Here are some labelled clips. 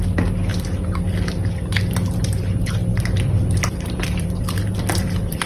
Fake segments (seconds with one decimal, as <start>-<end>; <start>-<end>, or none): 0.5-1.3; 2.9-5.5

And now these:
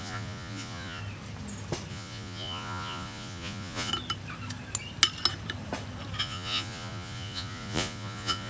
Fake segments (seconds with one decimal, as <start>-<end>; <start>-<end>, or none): 0.0-1.0; 1.9-3.9; 6.2-8.5

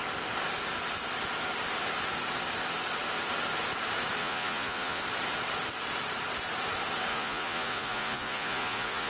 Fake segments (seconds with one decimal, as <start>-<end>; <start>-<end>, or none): 4.2-5.0; 7.1-9.1

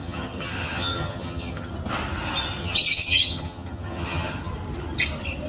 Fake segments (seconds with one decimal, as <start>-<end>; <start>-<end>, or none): 0.0-1.7; 2.6-4.5

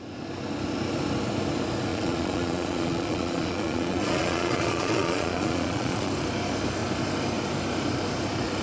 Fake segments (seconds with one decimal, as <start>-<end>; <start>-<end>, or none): 1.9-6.1